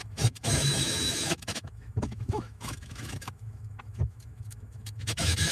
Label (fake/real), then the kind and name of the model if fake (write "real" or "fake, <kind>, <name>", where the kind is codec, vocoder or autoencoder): fake, autoencoder, DAC-VAE